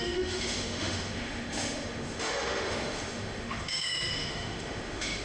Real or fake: fake